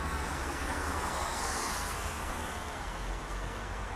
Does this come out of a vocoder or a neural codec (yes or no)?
yes